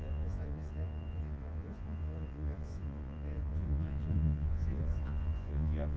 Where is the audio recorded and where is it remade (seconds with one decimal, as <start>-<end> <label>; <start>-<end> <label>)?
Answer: 0.0-6.0 remade